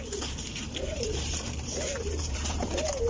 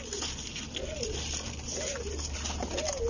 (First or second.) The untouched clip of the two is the second